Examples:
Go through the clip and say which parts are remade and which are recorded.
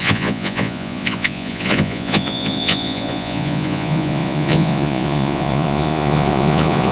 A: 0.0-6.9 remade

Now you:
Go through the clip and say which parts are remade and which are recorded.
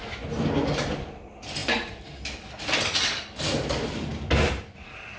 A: 0.0-5.2 recorded